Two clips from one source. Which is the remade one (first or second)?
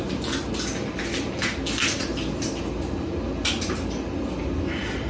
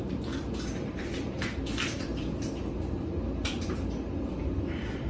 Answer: second